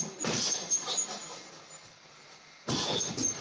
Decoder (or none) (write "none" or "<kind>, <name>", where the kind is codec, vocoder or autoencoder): none